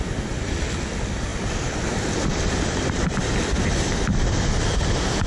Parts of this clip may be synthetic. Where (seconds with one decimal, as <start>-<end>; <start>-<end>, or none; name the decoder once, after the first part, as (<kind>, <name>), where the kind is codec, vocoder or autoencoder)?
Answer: none

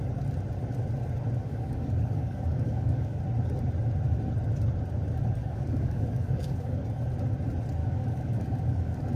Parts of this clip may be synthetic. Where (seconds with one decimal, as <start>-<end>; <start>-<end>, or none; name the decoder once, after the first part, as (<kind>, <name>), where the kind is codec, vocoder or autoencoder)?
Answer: 1.4-3.2 (codec, DAC); 5.4-7.0; 7.8-9.2

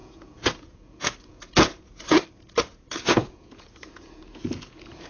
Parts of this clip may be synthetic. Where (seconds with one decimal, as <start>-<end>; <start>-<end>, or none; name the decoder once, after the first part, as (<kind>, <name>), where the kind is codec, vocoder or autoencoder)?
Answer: 0.0-2.2 (vocoder, Vocos); 2.7-5.1

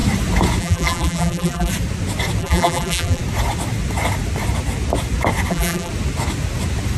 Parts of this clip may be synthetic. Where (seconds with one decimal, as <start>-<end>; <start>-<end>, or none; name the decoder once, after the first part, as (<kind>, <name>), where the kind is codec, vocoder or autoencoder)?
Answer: 0.6-1.7 (vocoder, BigVGAN v2); 2.4-3.2; 5.5-5.9

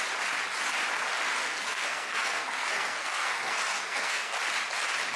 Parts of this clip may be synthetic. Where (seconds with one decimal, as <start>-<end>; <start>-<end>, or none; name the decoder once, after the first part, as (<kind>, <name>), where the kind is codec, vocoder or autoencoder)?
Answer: 1.4-4.4 (codec, SNAC)